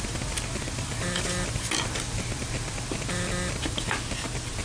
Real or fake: real